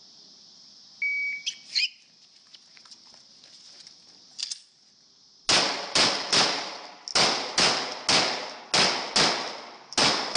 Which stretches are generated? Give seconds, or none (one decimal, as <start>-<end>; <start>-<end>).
none